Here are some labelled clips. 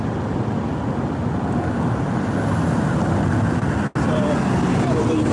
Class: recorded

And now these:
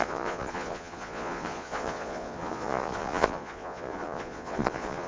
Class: remade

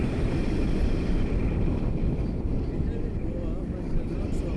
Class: recorded